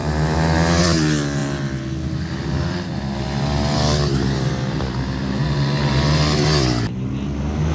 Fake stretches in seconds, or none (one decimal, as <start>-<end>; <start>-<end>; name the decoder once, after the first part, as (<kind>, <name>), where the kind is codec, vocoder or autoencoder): none